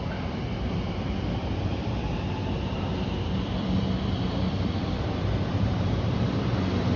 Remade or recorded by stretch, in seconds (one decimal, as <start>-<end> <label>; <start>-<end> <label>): 0.0-1.7 recorded; 1.7-2.2 remade; 2.2-2.9 recorded; 2.9-6.4 remade; 6.4-7.0 recorded